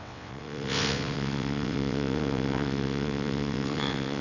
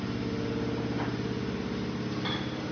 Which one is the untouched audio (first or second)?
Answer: second